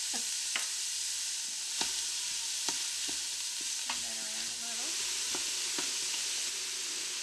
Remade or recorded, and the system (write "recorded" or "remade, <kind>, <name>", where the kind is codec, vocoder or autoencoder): recorded